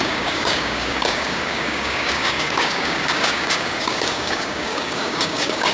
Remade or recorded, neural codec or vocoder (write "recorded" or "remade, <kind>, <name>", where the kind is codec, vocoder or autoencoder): remade, codec, DAC